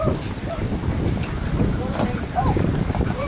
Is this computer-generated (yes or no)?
yes